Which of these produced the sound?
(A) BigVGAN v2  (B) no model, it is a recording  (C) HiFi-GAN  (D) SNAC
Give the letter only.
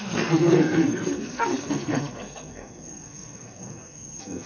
D